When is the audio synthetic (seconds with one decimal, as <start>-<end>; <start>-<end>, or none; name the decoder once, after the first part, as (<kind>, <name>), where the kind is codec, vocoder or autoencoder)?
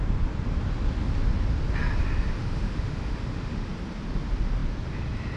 2.3-3.7 (autoencoder, DAC-VAE)